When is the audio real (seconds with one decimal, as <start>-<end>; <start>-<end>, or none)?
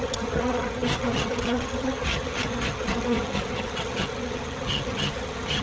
none